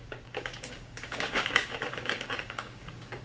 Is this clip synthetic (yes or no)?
yes